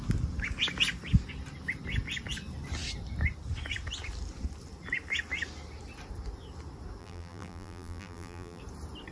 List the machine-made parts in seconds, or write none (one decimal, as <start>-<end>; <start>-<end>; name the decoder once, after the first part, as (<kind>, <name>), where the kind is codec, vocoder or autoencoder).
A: 7.0-8.6 (vocoder, BigVGAN v2)